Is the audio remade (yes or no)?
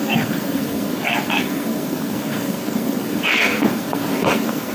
yes